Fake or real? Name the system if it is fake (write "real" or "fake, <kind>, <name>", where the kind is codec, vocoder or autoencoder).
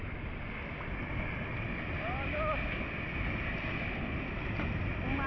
real